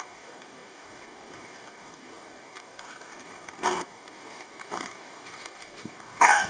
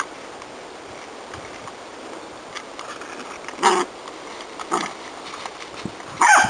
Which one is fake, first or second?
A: first